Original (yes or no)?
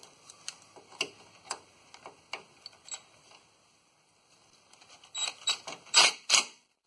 yes